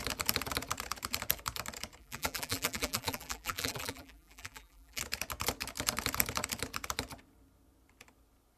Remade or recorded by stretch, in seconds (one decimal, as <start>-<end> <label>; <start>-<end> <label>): 0.0-2.0 recorded; 2.0-5.0 remade; 5.0-8.6 recorded